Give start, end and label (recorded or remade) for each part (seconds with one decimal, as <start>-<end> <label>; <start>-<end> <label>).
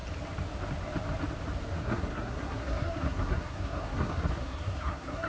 0.0-1.8 recorded; 1.8-5.3 remade